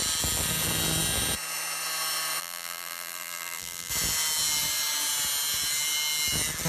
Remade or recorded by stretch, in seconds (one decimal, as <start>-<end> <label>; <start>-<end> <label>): 0.0-2.4 recorded; 2.4-3.9 remade; 3.9-6.7 recorded